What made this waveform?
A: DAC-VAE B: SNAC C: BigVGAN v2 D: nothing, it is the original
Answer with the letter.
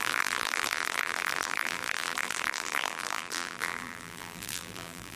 C